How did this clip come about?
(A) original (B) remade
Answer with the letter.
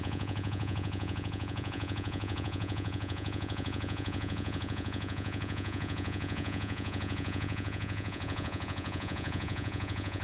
B